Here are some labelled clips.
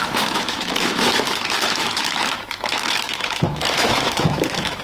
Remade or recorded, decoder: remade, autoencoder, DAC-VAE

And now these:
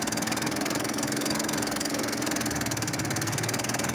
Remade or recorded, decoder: remade, codec, SNAC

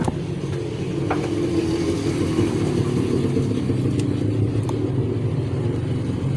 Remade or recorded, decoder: recorded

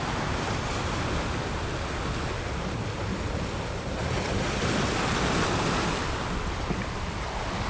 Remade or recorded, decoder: recorded